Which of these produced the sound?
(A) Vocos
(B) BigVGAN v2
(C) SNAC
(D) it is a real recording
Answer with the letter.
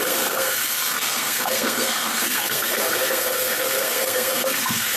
C